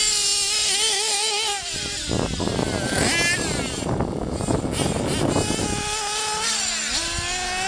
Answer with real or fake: real